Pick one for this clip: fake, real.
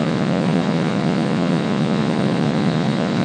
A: fake